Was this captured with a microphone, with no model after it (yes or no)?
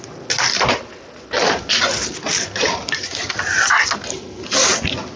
yes